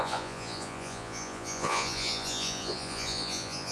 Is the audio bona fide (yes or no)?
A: no